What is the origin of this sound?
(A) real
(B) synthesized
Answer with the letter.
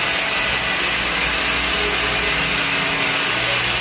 A